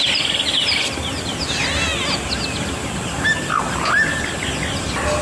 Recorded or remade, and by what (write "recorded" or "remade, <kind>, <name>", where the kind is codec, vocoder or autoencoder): recorded